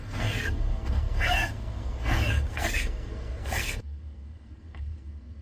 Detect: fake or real fake